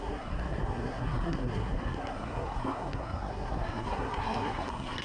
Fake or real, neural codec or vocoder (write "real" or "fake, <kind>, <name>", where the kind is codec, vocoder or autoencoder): fake, codec, SNAC